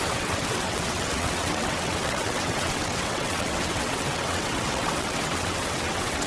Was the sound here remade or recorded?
remade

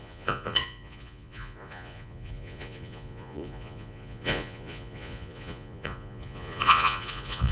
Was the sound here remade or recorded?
remade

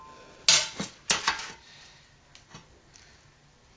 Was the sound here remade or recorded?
recorded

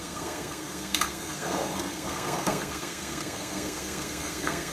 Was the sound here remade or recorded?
remade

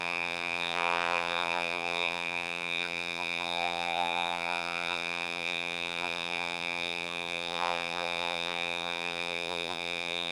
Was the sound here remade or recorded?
remade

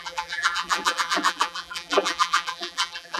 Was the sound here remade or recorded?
remade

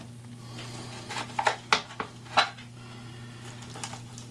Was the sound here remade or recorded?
recorded